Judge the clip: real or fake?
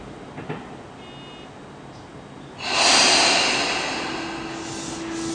real